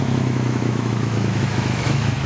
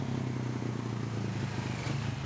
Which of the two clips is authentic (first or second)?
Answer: second